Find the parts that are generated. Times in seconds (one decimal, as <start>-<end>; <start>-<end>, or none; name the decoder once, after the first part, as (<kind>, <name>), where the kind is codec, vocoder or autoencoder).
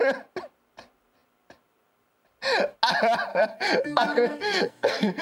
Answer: 3.3-5.2 (codec, SNAC)